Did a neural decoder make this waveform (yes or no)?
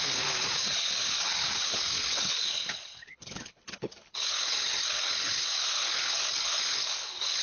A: yes